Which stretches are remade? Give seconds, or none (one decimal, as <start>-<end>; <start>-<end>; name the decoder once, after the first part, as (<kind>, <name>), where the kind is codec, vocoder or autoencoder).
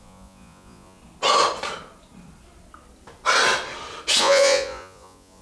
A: 0.0-1.0 (vocoder, Vocos); 4.2-5.4